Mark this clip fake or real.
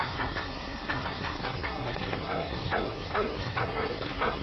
fake